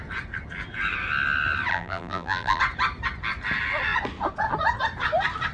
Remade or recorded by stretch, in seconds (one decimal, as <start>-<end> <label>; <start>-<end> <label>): 0.0-1.7 recorded; 1.7-2.6 remade; 2.6-5.5 recorded